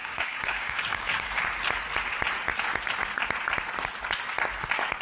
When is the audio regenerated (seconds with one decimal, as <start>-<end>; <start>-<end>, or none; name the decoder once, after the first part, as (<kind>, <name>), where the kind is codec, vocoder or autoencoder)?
0.0-1.4 (codec, DAC)